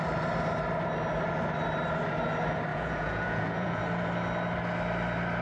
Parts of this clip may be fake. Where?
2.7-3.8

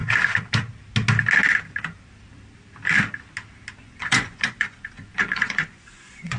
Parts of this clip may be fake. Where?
3.8-6.4